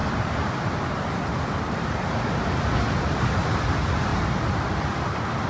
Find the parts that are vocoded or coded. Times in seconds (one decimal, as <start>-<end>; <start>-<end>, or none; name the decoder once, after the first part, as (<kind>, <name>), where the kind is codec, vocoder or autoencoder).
none